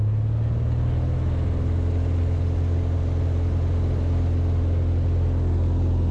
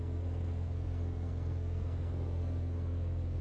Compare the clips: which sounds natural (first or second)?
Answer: first